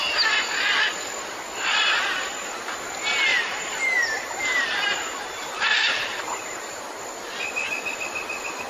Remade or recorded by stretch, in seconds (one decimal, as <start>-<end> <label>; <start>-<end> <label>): 0.0-3.3 recorded; 3.3-6.8 remade; 6.8-8.7 recorded